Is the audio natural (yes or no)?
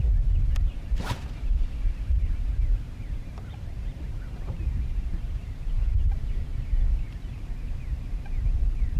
no